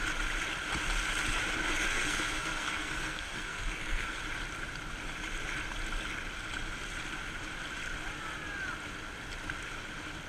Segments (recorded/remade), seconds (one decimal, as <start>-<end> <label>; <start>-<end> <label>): 0.0-1.9 recorded; 1.9-4.2 remade; 4.2-10.3 recorded